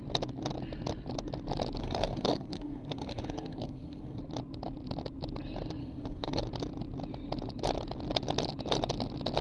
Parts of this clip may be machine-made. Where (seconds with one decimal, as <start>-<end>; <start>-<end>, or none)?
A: 1.8-4.2; 5.8-6.4